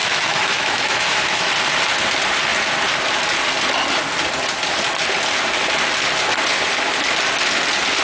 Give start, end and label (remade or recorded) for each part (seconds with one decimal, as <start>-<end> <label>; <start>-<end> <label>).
0.0-1.5 remade; 1.5-8.0 recorded